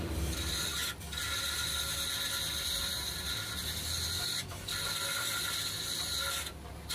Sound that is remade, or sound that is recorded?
remade